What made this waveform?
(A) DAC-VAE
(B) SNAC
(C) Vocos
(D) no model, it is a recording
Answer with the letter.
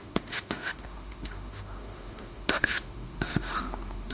A